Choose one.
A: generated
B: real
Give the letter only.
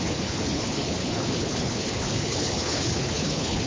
A